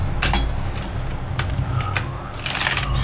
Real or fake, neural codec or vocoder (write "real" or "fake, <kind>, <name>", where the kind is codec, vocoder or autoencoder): real